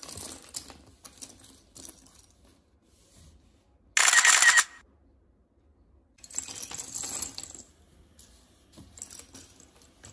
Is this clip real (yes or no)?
yes